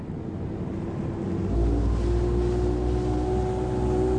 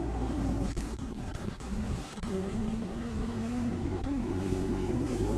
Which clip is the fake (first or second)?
second